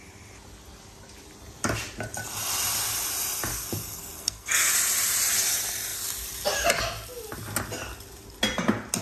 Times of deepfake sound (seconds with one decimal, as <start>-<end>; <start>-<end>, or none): 3.5-4.7

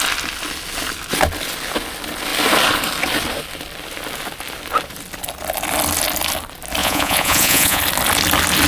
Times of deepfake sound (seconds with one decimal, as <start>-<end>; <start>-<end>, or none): 6.8-7.8

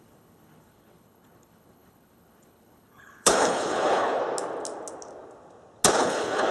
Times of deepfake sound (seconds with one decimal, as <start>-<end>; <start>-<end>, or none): 0.0-4.2; 6.0-6.5

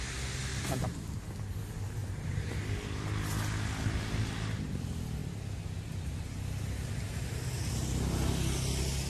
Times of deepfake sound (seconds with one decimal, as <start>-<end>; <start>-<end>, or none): 0.5-1.2; 2.0-2.6

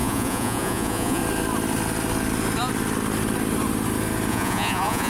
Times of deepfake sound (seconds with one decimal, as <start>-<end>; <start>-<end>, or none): 0.0-1.2; 4.3-5.1